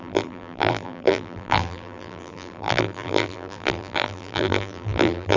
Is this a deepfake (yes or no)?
yes